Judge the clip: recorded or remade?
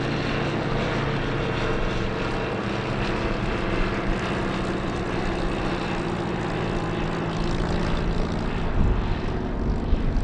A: recorded